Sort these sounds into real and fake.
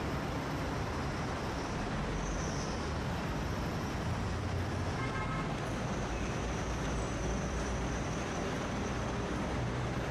fake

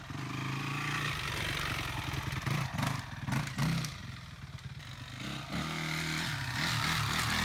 real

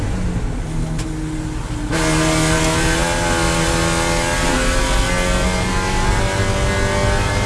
real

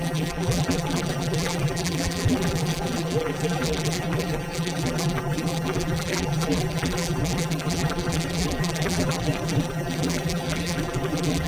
fake